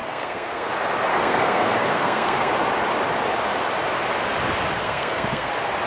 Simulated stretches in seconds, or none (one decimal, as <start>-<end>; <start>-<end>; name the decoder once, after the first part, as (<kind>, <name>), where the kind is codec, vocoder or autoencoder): 0.0-0.7 (codec, SNAC); 1.1-2.5; 4.8-5.5